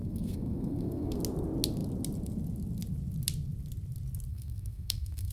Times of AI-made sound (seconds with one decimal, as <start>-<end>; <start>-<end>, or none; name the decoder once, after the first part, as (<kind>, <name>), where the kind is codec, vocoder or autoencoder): 0.0-1.2 (codec, SNAC); 4.3-5.3